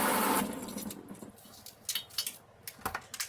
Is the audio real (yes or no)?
yes